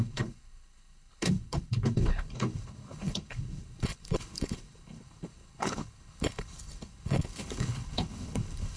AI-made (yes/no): yes